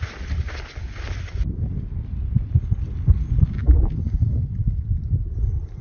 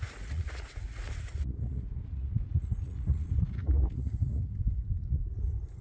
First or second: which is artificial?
second